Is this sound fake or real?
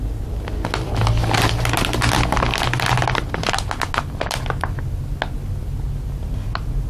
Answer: real